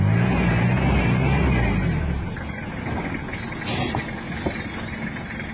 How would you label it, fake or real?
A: real